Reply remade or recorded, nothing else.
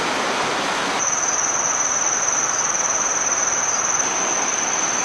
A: recorded